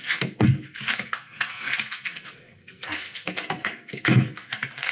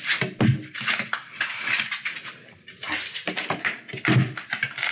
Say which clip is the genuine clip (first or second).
second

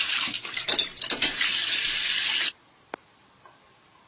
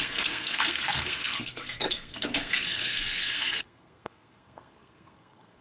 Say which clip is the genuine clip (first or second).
first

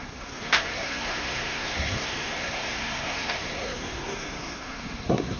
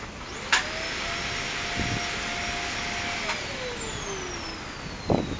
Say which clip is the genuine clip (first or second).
second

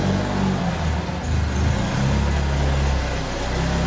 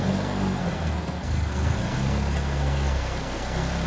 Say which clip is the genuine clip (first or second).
first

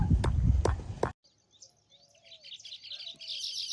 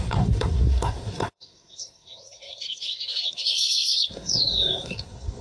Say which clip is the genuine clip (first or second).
first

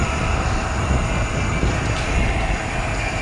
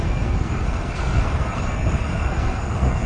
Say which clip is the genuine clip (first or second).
first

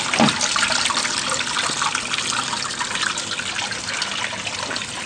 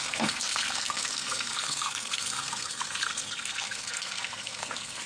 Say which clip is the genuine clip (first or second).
first